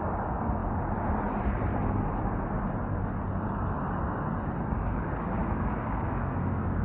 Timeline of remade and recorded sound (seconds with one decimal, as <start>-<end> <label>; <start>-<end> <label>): 0.0-0.6 remade; 0.6-4.7 recorded; 4.7-6.8 remade